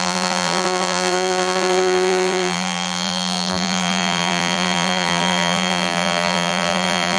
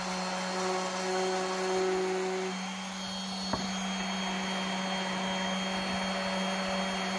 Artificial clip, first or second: first